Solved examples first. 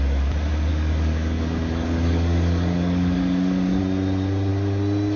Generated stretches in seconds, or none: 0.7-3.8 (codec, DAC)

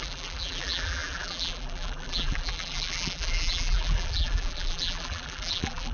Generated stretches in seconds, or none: 0.0-5.9 (vocoder, BigVGAN v2)

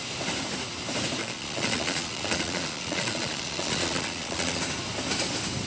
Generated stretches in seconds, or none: 1.2-4.6 (vocoder, Vocos)

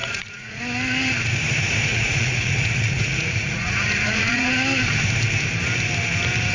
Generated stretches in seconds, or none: 0.0-0.6 (vocoder, Vocos); 1.9-4.5

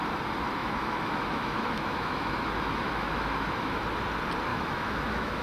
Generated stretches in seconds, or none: 0.6-3.8 (autoencoder, DAC-VAE); 4.5-5.4

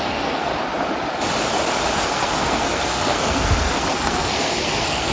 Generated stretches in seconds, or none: 0.0-0.5 (codec, SNAC); 1.9-5.1

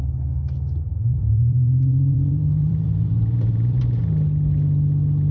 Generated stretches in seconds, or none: 1.2-4.0 (vocoder, BigVGAN v2)

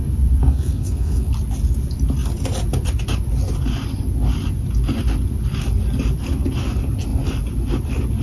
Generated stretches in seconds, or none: 0.4-1.3 (codec, SNAC)